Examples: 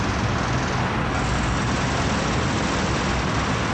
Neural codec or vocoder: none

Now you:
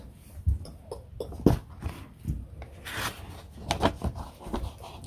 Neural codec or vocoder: none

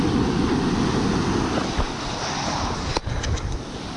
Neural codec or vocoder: none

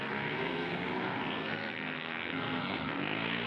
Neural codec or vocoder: codec, SNAC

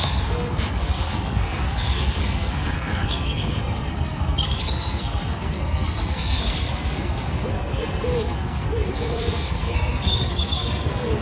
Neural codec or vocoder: codec, SNAC